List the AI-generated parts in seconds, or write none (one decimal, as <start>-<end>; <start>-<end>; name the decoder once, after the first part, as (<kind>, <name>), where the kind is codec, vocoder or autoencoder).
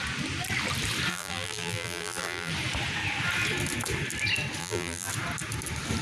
1.1-2.5 (vocoder, BigVGAN v2); 4.6-5.1